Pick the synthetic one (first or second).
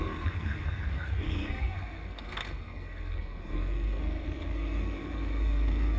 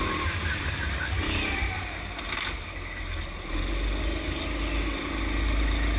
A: first